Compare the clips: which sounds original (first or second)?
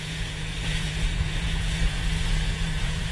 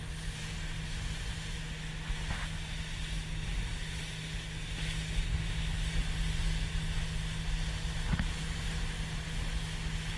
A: second